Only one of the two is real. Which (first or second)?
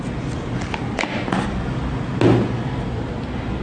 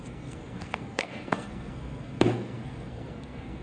first